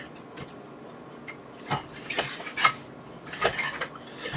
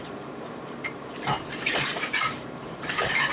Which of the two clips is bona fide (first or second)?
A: first